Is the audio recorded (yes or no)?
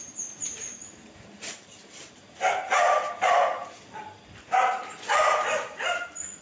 no